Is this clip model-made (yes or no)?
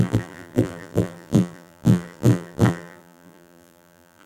yes